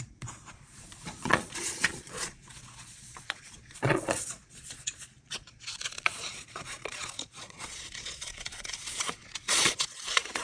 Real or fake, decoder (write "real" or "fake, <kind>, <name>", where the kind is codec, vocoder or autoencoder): fake, vocoder, Vocos